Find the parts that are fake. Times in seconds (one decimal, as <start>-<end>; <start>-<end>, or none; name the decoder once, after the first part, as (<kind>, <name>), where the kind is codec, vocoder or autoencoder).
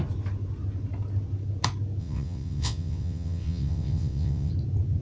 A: 2.0-4.5 (vocoder, WaveNeXt)